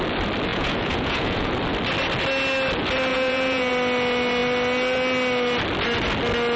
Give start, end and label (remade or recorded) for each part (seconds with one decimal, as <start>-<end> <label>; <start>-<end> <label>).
0.0-0.5 recorded; 0.5-1.5 remade; 1.5-3.1 recorded; 3.1-3.7 remade; 3.7-6.6 recorded